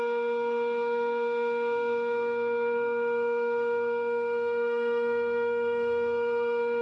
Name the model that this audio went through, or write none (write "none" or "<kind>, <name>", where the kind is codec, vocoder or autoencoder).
codec, SNAC